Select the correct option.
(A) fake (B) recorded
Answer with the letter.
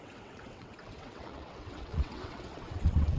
A